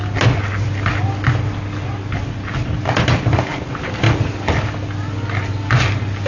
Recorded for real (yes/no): yes